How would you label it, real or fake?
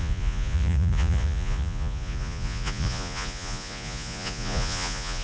fake